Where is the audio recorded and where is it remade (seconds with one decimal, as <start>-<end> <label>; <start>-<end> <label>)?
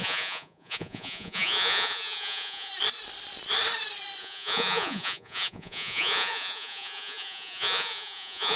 0.0-2.7 remade; 2.7-4.2 recorded; 4.2-8.6 remade